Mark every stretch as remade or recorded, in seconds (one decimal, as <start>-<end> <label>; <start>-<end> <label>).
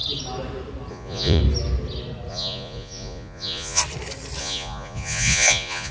0.0-0.9 recorded; 0.9-1.4 remade; 1.4-2.3 recorded; 2.3-3.8 remade; 3.8-4.4 recorded; 4.4-5.9 remade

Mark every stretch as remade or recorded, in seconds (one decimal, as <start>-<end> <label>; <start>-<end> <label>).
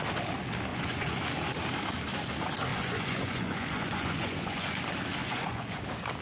0.0-0.7 recorded; 0.7-1.2 remade; 1.2-2.7 recorded; 2.7-4.8 remade; 4.8-5.2 recorded; 5.2-5.8 remade; 5.8-6.2 recorded